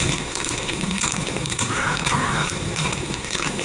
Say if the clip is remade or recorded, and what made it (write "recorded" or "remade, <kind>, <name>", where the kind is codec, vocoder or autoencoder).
remade, codec, SNAC